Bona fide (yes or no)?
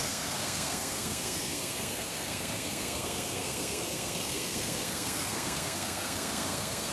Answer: no